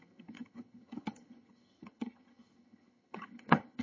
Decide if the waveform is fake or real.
fake